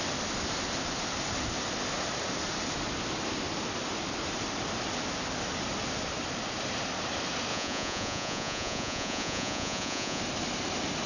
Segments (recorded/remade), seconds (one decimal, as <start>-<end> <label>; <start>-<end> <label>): 0.0-7.5 recorded; 7.5-10.2 remade; 10.2-11.1 recorded